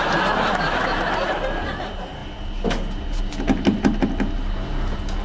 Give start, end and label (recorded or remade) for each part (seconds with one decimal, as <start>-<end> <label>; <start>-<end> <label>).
0.0-5.2 recorded